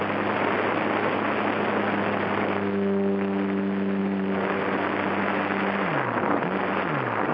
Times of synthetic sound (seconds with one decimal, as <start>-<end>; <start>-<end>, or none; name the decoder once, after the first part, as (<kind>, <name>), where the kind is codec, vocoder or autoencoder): none